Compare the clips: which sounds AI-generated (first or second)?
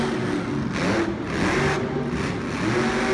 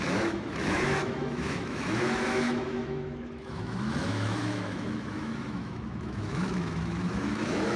second